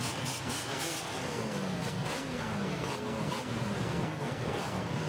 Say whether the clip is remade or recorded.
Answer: remade